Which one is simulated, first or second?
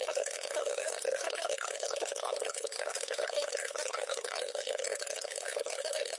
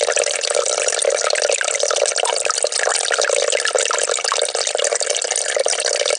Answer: first